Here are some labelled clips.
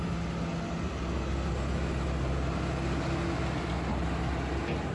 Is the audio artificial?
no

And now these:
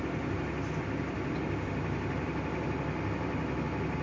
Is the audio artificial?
no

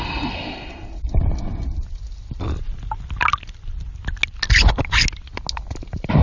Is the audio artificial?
no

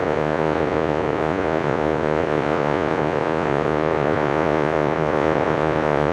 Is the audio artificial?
yes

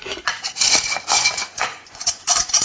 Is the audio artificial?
yes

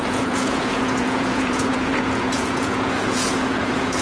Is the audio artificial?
yes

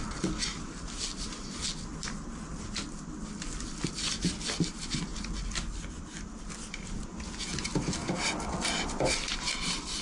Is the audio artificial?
no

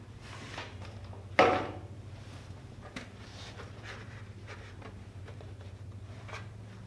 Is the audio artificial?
no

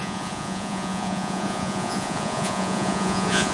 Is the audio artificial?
yes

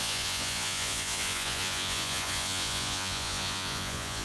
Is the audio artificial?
yes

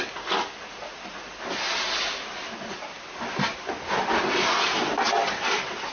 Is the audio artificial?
no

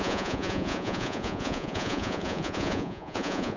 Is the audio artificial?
yes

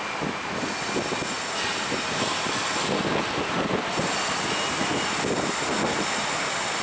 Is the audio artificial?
no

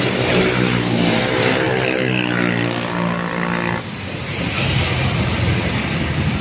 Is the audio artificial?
no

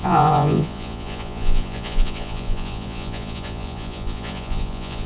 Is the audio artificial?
yes